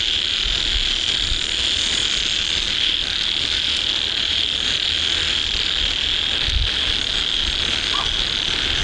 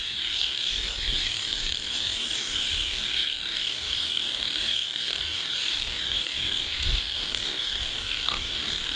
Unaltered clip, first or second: first